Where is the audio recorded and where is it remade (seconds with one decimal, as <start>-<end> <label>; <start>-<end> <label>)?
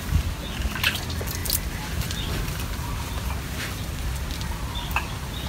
0.0-5.5 recorded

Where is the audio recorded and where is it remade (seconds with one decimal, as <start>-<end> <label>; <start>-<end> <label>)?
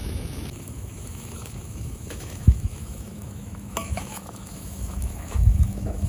0.0-6.1 remade